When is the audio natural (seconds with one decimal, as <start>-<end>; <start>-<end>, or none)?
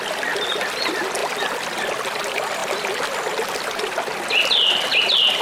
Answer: 0.0-5.4